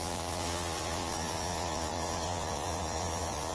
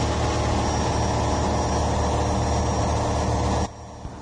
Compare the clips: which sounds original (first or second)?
second